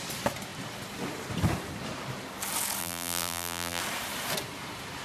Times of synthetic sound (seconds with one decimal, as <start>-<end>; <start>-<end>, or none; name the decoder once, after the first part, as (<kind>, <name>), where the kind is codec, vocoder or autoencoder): 2.8-3.8 (vocoder, BigVGAN v2)